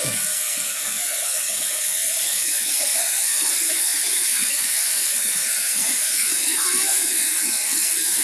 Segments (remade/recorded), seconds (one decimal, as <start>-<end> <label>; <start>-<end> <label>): 0.0-8.2 remade